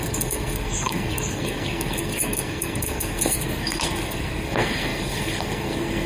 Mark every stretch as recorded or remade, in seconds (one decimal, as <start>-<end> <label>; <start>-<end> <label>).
0.0-6.1 remade